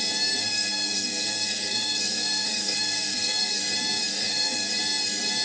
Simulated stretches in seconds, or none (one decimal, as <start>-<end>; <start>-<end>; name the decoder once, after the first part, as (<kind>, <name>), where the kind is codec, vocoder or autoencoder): 0.4-3.6 (codec, SNAC); 4.1-4.7